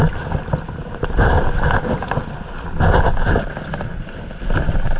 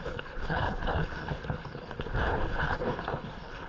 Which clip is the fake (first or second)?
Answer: second